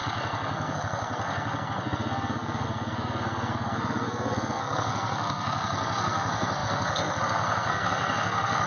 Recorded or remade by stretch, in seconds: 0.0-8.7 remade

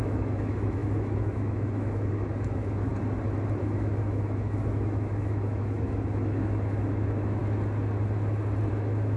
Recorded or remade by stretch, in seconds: 0.0-2.9 remade; 2.9-3.6 recorded; 3.6-7.4 remade; 7.4-8.7 recorded; 8.7-9.2 remade

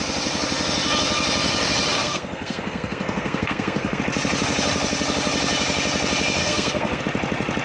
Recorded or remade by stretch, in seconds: 0.0-2.0 recorded; 2.0-4.0 remade; 4.0-6.4 recorded; 6.4-7.0 remade; 7.0-7.6 recorded

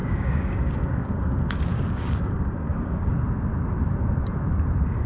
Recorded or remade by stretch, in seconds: 0.0-3.1 remade; 3.1-5.1 recorded

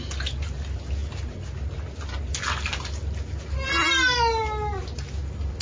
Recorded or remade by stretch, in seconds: 0.0-5.6 recorded

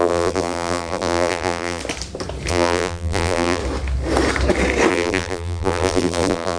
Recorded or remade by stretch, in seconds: 0.0-1.8 remade; 1.8-2.5 recorded; 2.5-3.6 remade; 3.6-4.9 recorded; 4.9-6.6 remade

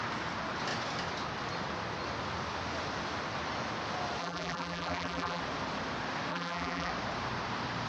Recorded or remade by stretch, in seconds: 0.0-4.2 recorded; 4.2-5.4 remade; 5.4-6.3 recorded; 6.3-6.9 remade; 6.9-7.9 recorded

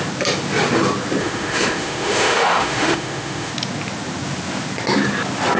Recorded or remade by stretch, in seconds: 0.0-1.2 recorded; 1.2-3.5 remade; 3.5-5.6 recorded